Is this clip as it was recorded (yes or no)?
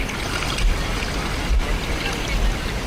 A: yes